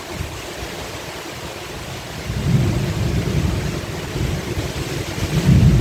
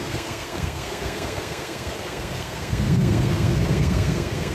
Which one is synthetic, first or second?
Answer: second